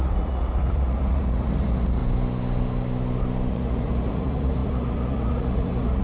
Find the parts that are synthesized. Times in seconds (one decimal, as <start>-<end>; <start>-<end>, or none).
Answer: 0.0-2.0; 3.5-6.0